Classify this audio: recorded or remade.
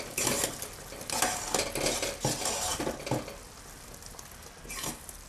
recorded